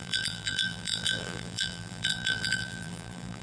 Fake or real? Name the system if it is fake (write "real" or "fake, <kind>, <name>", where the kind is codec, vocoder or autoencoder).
fake, vocoder, BigVGAN v2